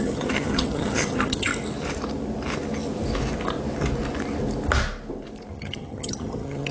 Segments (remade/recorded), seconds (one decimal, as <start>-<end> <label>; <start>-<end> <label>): 0.0-1.5 remade; 1.5-5.5 recorded; 5.5-6.7 remade

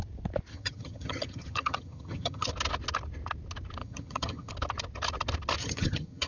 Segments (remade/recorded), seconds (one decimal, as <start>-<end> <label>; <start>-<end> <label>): 0.0-0.5 recorded; 0.5-2.5 remade; 2.5-3.8 recorded; 3.8-4.5 remade; 4.5-5.6 recorded; 5.6-6.3 remade

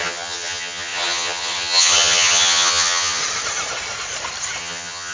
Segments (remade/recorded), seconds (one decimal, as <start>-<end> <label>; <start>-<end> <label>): 0.0-3.2 remade; 3.2-4.6 recorded; 4.6-5.1 remade

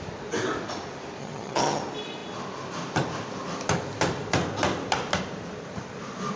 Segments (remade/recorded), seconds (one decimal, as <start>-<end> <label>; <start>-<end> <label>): 0.0-1.2 recorded; 1.2-1.8 remade; 1.8-6.4 recorded

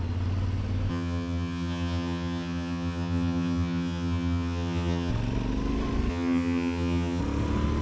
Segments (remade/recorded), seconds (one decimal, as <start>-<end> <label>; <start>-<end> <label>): 0.0-0.9 recorded; 0.9-5.1 remade; 5.1-6.1 recorded; 6.1-7.2 remade; 7.2-7.8 recorded

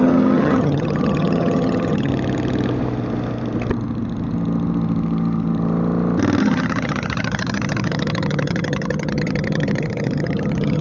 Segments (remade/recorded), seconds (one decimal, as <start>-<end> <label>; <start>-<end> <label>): 0.0-2.1 remade; 2.1-6.4 recorded; 6.4-10.8 remade